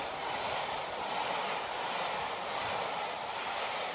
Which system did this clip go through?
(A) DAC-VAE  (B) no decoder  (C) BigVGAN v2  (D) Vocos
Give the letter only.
B